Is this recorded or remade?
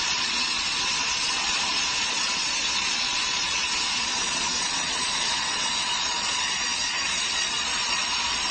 remade